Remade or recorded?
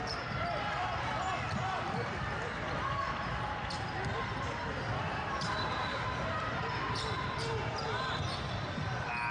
remade